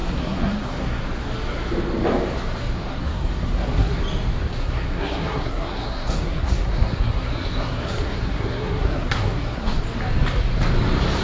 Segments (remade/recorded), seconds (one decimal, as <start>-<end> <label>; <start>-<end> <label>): 0.0-1.0 remade; 1.0-2.9 recorded; 2.9-4.0 remade; 4.0-4.6 recorded; 4.6-9.8 remade; 9.8-11.2 recorded